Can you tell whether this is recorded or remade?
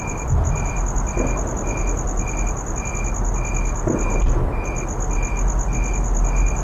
recorded